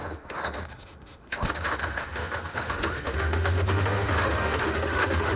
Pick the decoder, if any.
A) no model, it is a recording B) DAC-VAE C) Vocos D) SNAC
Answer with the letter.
B